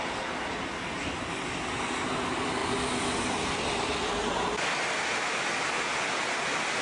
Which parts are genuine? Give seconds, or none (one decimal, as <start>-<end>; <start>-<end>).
0.0-6.8